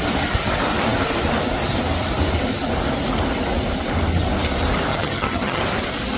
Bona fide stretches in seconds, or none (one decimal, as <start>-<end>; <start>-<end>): 0.0-4.9; 5.6-6.2